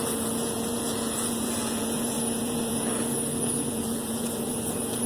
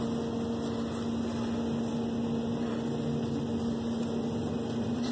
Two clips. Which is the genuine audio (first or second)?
second